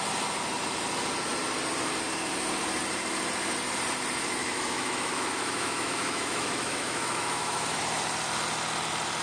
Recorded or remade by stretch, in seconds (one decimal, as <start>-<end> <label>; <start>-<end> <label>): 0.0-4.4 recorded; 4.4-7.8 remade; 7.8-9.2 recorded